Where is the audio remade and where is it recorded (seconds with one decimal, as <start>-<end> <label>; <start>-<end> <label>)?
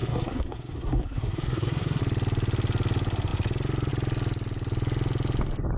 0.0-2.0 remade; 2.0-5.8 recorded